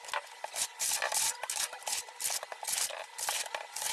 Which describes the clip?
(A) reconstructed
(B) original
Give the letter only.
B